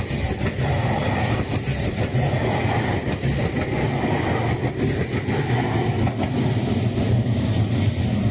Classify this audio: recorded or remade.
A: recorded